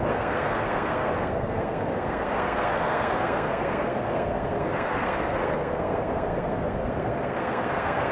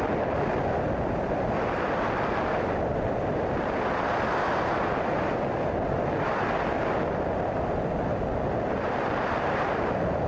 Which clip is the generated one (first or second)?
first